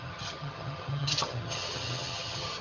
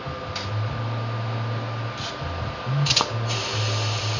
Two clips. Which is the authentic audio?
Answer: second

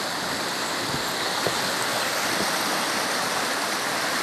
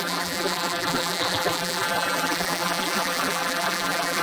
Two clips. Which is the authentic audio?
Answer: first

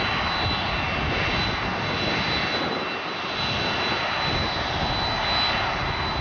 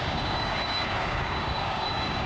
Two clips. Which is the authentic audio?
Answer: first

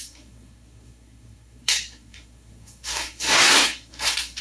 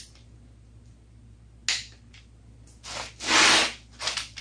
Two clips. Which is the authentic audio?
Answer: second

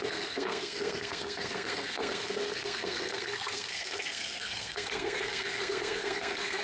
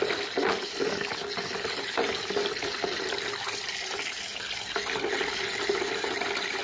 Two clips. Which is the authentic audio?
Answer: second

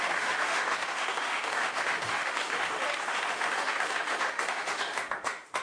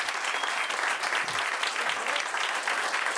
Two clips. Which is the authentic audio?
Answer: second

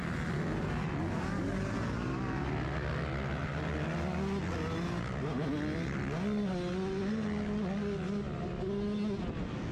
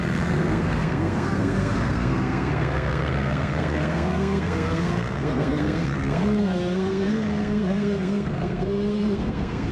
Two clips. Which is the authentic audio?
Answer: first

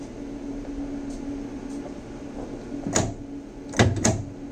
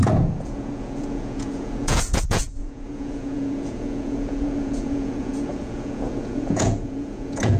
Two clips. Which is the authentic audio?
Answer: first